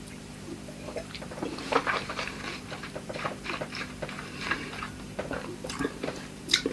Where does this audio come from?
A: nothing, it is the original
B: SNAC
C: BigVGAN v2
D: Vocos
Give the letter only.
C